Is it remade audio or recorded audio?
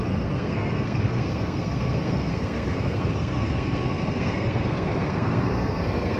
remade